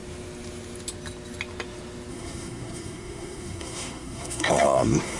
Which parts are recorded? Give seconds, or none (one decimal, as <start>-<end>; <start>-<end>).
0.0-2.1